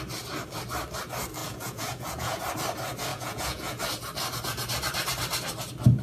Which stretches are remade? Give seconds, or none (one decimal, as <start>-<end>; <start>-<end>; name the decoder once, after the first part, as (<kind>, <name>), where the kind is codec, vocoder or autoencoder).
1.4-2.4 (vocoder, Vocos); 3.1-3.8